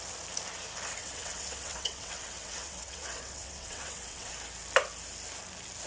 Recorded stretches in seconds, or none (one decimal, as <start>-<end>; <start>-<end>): 0.0-1.0; 4.3-5.9